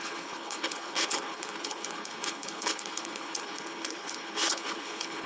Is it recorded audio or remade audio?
remade